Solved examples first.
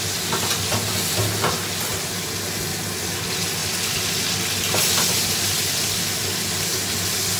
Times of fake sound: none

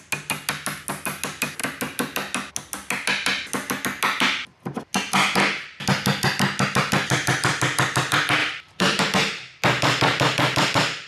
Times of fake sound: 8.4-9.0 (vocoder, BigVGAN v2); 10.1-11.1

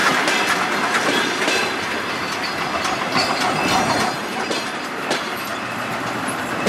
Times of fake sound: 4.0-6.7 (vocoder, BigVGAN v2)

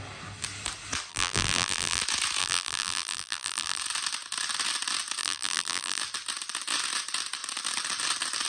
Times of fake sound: 1.1-2.0 (vocoder, BigVGAN v2); 2.4-3.8; 5.2-6.0